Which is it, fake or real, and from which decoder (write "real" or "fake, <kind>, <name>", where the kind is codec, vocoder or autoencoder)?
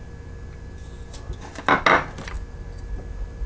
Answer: real